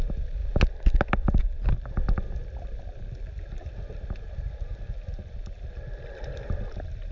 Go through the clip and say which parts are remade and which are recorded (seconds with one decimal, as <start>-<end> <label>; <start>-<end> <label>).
0.0-7.1 recorded